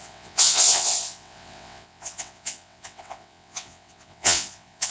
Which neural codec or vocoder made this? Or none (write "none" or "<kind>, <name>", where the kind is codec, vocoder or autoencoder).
vocoder, WaveNeXt